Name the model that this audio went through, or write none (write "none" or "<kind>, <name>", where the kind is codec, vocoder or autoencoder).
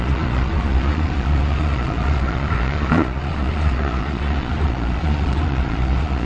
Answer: vocoder, Vocos